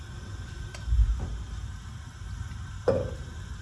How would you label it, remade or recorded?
recorded